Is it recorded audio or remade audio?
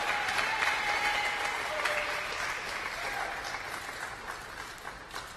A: recorded